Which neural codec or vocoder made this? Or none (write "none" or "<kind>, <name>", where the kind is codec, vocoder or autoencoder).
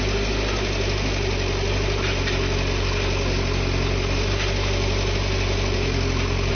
none